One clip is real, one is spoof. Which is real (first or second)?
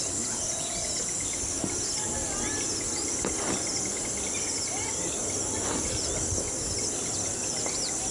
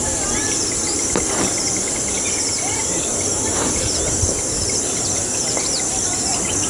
first